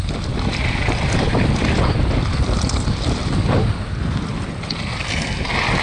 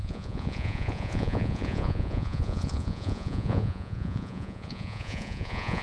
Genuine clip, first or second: first